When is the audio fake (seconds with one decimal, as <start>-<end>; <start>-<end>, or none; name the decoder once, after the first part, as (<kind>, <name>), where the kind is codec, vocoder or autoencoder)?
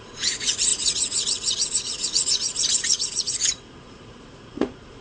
0.0-5.0 (vocoder, Vocos)